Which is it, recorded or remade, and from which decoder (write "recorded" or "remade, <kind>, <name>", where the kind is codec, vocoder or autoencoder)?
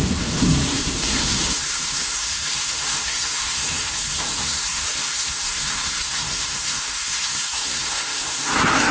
remade, codec, SNAC